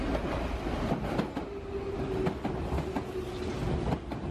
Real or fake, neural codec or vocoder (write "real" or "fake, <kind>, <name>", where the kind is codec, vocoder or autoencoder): real